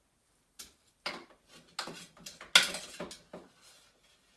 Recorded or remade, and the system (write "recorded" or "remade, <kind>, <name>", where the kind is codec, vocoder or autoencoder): recorded